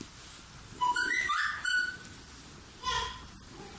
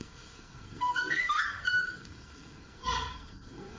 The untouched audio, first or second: first